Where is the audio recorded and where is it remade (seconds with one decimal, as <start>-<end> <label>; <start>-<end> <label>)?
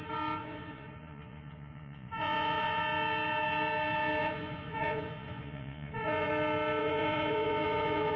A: 0.0-0.4 recorded; 0.4-2.8 remade; 2.8-4.2 recorded; 4.2-6.3 remade; 6.3-6.8 recorded; 6.8-8.2 remade